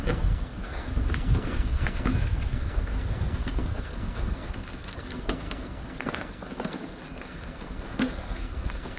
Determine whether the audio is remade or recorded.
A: remade